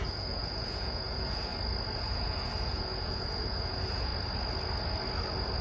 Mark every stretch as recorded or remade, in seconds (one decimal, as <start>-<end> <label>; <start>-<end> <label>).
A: 0.0-1.5 remade; 1.5-2.0 recorded; 2.0-4.1 remade; 4.1-5.6 recorded